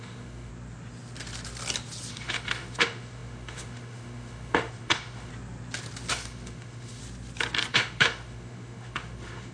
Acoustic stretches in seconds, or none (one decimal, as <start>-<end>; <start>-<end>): 0.5-2.1; 5.3-6.1; 7.0-7.7